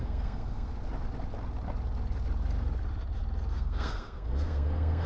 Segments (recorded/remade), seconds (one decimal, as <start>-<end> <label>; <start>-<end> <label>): 0.0-0.7 remade; 0.7-3.5 recorded; 3.5-5.1 remade

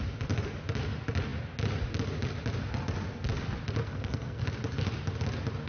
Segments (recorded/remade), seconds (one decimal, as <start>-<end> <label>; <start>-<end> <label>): 0.0-3.8 recorded; 3.8-4.4 remade; 4.4-5.7 recorded